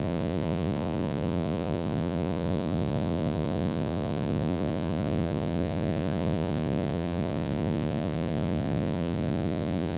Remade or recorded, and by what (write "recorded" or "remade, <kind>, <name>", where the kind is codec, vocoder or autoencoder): remade, vocoder, Vocos